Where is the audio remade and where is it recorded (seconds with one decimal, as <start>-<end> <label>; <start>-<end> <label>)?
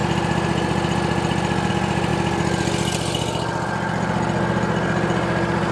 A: 0.0-5.7 recorded